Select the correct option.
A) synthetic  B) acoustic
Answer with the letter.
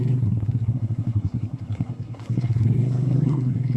A